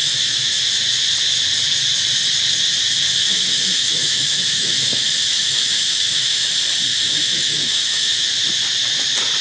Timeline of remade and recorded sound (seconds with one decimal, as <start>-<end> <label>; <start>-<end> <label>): 0.0-0.6 remade; 0.6-3.2 recorded; 3.2-6.5 remade; 6.5-6.9 recorded; 6.9-8.3 remade; 8.3-9.4 recorded